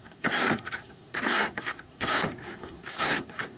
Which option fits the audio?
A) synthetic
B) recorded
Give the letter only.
A